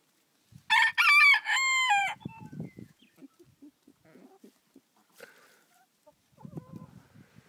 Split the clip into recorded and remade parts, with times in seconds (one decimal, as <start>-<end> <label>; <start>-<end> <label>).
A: 0.0-2.0 recorded; 2.0-3.0 remade; 3.0-7.5 recorded